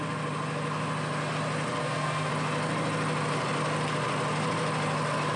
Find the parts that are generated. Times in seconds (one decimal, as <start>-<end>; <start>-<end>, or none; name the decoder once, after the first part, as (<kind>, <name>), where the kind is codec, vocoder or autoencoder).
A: 1.8-2.3 (codec, SNAC)